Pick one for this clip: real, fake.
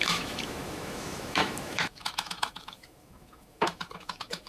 fake